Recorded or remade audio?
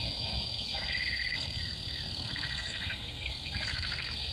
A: remade